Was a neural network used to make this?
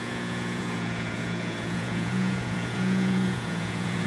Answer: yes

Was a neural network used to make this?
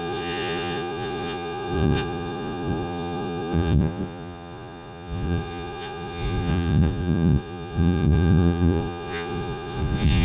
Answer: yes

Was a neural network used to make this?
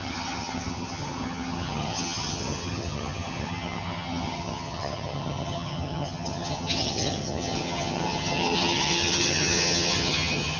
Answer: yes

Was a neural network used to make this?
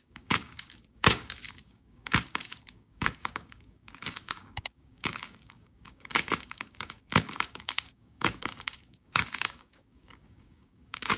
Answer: yes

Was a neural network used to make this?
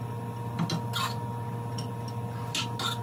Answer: no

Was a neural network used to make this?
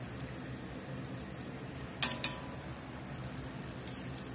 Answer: no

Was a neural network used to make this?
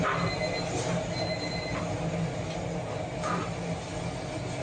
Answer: no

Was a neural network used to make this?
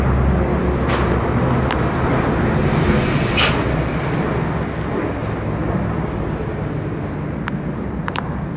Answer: no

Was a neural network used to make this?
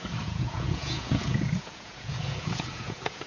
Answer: yes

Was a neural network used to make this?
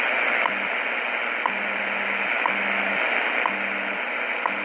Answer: no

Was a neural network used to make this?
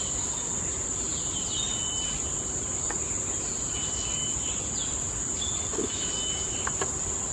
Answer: no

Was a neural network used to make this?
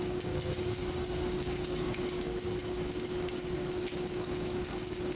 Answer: yes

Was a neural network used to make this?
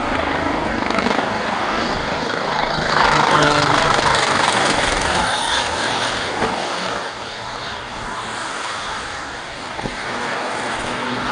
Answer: yes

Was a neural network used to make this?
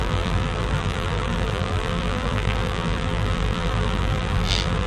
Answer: yes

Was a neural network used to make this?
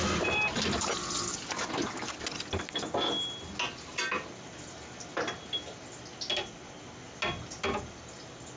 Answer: no